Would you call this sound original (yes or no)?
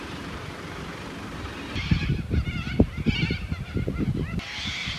no